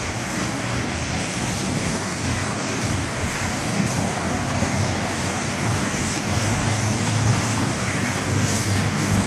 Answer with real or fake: fake